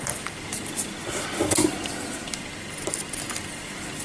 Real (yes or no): yes